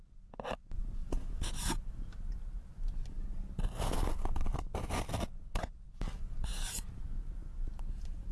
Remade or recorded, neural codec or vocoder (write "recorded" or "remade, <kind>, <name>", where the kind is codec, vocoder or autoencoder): recorded